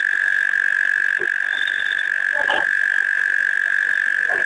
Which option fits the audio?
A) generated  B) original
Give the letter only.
B